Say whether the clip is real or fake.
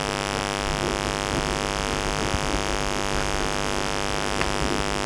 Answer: real